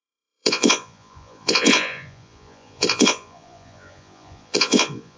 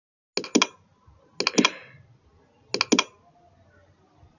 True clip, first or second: second